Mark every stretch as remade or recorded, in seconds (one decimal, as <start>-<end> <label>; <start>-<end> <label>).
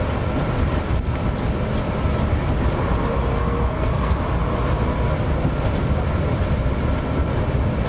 0.0-3.3 recorded; 3.3-4.2 remade; 4.2-7.9 recorded